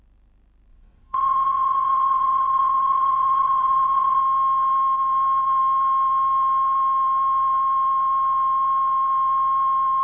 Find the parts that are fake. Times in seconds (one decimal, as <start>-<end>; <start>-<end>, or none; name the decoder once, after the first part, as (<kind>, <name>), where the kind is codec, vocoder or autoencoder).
0.7-4.2 (vocoder, WaveNeXt)